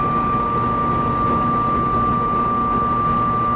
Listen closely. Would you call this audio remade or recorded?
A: recorded